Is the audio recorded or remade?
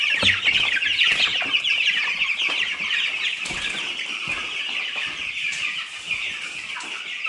recorded